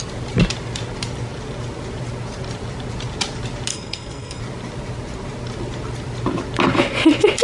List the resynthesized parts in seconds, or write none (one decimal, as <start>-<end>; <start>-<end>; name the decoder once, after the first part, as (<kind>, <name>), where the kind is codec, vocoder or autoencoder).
3.7-4.4 (codec, SNAC)